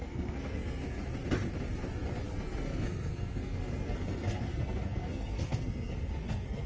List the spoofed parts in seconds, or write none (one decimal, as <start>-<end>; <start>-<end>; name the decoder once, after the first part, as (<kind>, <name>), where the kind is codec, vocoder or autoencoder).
0.0-0.8 (codec, SNAC); 2.4-6.7